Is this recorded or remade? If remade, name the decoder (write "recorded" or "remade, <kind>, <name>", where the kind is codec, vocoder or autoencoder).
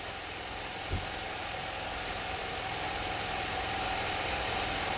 recorded